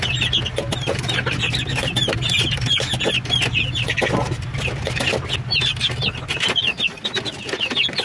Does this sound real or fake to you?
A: real